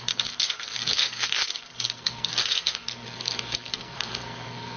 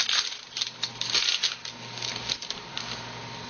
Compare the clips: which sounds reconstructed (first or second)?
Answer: first